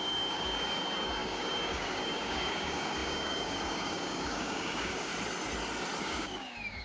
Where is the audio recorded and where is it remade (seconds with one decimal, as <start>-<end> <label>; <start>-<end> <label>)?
0.0-5.1 remade; 5.1-6.0 recorded; 6.0-6.8 remade